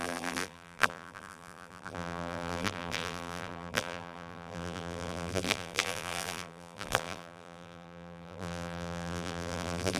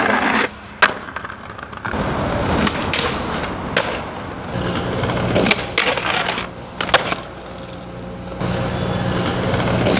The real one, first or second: second